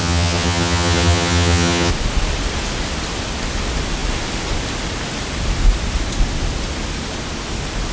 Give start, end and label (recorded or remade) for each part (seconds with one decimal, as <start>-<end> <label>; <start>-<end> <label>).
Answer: 0.0-1.9 remade; 1.9-7.9 recorded